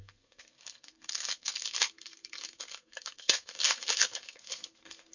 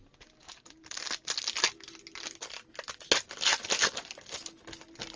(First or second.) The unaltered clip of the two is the second